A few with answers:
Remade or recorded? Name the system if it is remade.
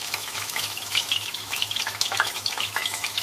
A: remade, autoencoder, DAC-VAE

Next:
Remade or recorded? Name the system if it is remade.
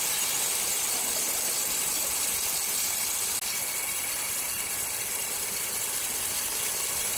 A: recorded